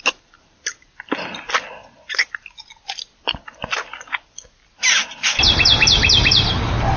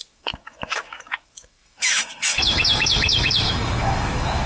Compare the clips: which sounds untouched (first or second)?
first